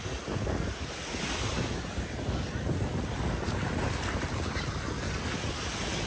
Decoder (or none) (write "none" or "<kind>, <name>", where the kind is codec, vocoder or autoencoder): none